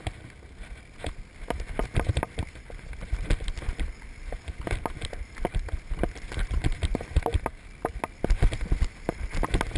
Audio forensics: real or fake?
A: real